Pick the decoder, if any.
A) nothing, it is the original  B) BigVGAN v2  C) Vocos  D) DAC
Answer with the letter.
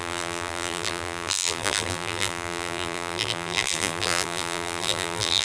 B